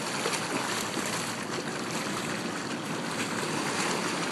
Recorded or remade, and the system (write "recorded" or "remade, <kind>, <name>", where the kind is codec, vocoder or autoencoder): recorded